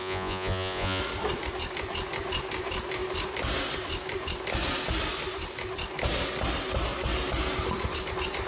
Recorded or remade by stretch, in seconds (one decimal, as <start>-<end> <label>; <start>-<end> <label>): 0.0-1.0 remade; 1.0-8.5 recorded